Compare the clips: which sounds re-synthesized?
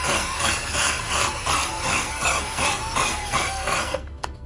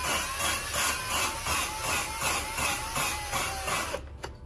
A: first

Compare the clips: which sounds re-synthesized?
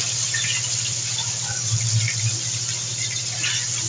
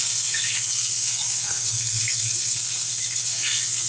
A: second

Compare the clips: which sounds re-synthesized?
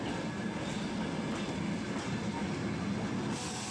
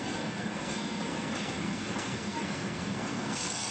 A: second